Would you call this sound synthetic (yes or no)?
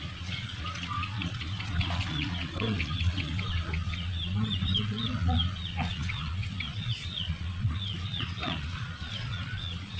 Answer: yes